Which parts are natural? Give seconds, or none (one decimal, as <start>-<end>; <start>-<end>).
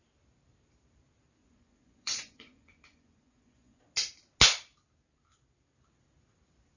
0.0-1.4; 3.8-6.8